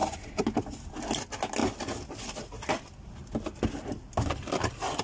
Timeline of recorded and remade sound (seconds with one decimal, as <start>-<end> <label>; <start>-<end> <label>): 0.0-5.0 recorded